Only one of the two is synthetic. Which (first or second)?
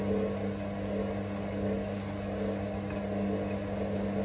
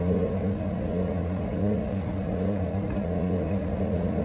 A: second